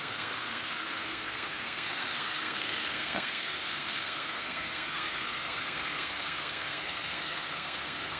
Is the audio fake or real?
fake